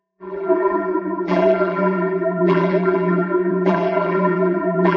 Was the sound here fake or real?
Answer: fake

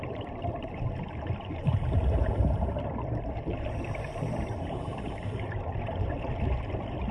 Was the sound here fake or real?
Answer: fake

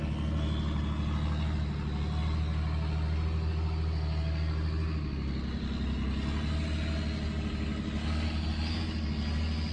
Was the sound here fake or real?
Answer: real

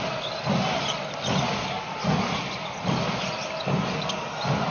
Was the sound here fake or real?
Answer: real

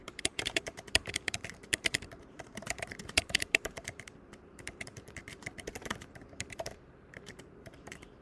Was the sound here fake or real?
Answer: fake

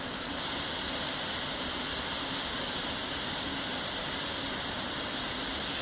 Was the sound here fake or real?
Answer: real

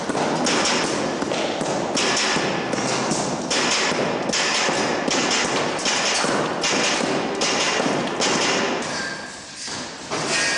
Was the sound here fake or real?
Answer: real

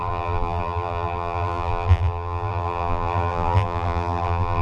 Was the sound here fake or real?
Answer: fake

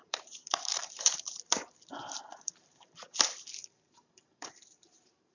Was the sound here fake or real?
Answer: fake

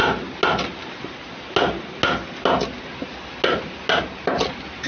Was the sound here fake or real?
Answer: real